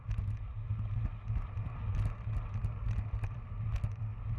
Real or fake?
real